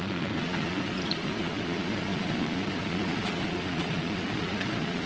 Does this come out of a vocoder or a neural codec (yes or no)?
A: yes